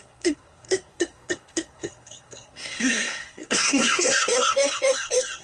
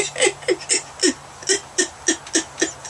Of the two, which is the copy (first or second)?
first